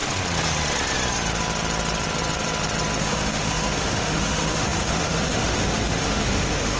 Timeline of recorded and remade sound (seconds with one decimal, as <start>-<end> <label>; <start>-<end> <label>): 0.0-3.0 recorded; 3.0-6.8 remade